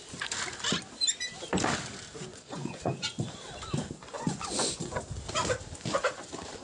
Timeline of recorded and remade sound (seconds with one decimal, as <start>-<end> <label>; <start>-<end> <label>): 0.0-2.3 recorded; 2.3-3.4 remade; 3.4-4.0 recorded; 4.0-5.0 remade; 5.0-6.6 recorded